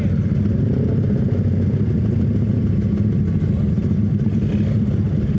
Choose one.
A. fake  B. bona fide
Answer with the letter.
B